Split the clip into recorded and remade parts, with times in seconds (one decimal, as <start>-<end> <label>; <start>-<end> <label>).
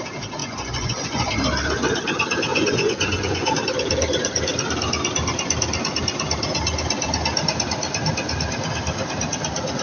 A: 0.0-0.4 recorded; 0.4-1.3 remade; 1.3-2.5 recorded; 2.5-3.5 remade; 3.5-9.8 recorded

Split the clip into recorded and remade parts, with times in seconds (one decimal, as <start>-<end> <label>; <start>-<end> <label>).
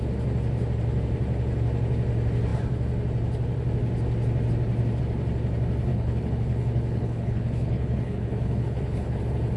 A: 0.0-5.9 recorded; 5.9-9.2 remade; 9.2-9.6 recorded